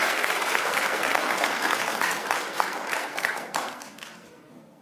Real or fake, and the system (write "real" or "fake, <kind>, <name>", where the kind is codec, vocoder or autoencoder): fake, codec, SNAC